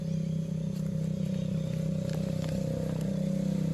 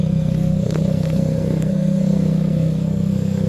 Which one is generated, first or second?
second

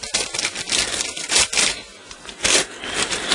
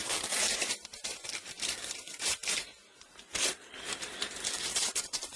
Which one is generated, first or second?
second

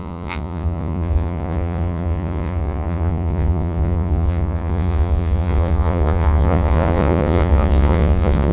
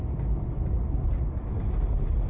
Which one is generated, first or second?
first